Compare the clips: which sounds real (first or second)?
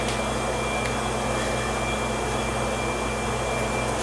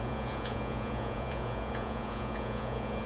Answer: first